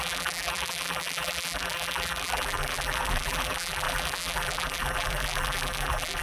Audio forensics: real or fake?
fake